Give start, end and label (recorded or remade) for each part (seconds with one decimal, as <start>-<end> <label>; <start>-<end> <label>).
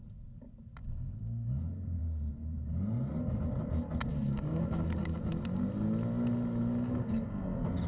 0.0-0.8 recorded; 0.8-1.6 remade; 1.6-4.1 recorded; 4.1-5.2 remade; 5.2-7.9 recorded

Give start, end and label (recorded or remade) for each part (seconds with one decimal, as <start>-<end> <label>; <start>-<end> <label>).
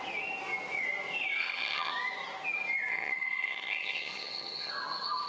0.0-1.4 recorded; 1.4-1.9 remade; 1.9-2.9 recorded; 2.9-4.7 remade; 4.7-5.3 recorded